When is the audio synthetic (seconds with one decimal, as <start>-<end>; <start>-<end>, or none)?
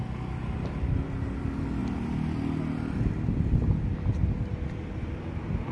none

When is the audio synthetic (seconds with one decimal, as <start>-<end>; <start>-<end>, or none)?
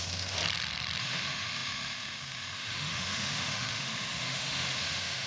0.0-0.4; 1.0-5.3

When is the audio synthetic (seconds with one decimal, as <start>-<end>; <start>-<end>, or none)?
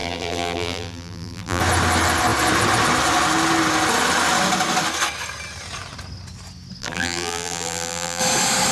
0.0-1.6; 6.8-8.2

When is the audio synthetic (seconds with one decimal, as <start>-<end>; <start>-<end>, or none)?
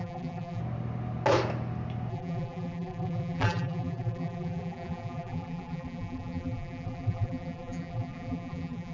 0.0-0.6; 2.1-8.9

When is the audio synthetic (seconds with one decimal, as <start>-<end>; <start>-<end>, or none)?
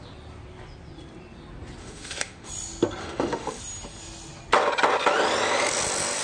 1.8-2.5; 3.0-3.6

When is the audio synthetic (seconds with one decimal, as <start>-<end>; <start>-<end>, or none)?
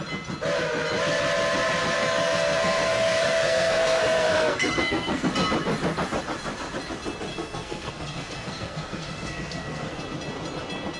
2.0-5.3; 7.3-10.0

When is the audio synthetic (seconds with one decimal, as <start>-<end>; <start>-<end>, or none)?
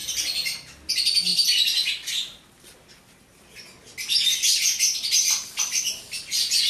none